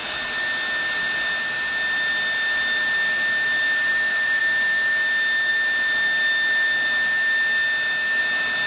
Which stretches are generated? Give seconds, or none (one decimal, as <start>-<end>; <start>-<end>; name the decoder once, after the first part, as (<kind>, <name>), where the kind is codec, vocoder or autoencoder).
3.9-4.4 (vocoder, BigVGAN v2)